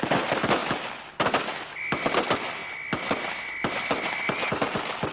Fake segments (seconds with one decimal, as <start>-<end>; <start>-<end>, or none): none